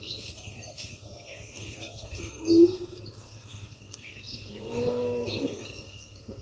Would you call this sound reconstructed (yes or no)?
yes